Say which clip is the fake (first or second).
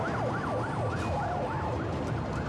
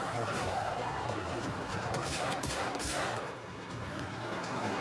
second